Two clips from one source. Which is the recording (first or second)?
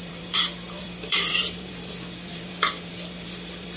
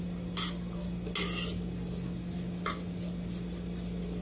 second